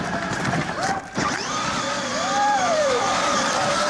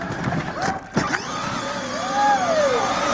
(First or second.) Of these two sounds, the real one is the second